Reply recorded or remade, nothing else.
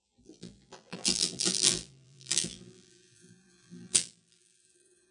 remade